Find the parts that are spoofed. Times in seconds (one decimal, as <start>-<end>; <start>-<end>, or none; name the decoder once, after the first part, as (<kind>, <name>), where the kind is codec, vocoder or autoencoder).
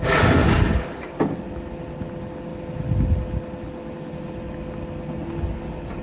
0.4-1.2 (vocoder, BigVGAN v2)